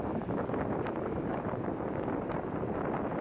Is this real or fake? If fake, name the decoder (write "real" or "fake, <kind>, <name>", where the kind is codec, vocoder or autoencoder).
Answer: real